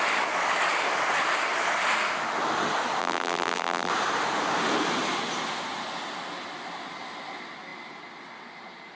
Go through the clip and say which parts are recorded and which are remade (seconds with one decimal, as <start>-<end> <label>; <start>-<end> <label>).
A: 0.0-3.0 recorded; 3.0-3.9 remade; 3.9-8.9 recorded